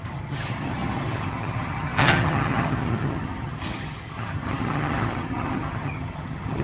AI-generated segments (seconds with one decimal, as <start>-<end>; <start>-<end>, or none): 0.0-6.6